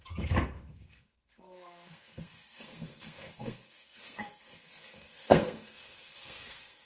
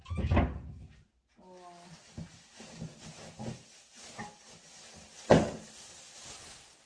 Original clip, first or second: second